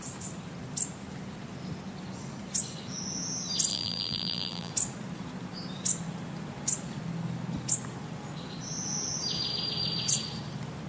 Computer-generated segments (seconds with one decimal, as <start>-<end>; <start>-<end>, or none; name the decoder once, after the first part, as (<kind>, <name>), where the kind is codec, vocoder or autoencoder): 3.7-4.7 (vocoder, BigVGAN v2)